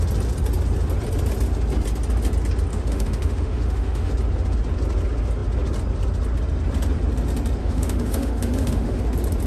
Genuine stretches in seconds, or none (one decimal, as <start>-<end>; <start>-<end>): 0.0-2.7; 4.1-7.6; 9.0-9.5